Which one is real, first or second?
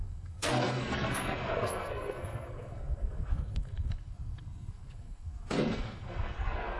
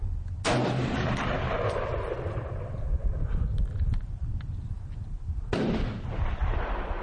second